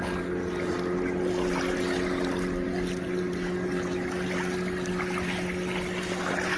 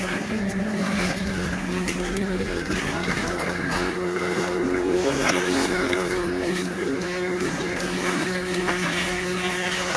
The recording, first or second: first